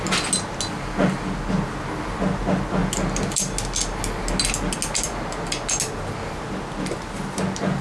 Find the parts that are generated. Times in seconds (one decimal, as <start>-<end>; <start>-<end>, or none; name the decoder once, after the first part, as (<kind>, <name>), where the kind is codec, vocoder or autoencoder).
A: none